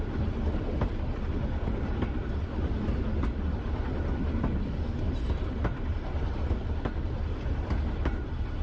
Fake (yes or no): no